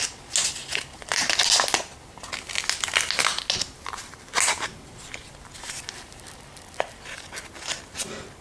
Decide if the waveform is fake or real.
real